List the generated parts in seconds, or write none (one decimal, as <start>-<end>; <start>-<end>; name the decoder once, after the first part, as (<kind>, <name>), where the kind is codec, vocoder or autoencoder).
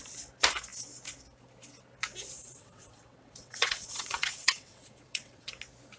2.4-5.5 (vocoder, WaveNeXt)